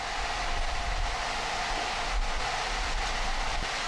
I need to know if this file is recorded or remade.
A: recorded